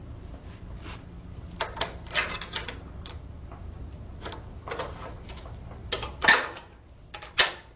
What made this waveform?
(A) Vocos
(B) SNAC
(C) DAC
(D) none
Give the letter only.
D